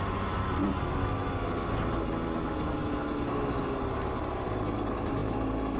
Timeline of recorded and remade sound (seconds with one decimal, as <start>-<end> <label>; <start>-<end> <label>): 0.0-5.8 recorded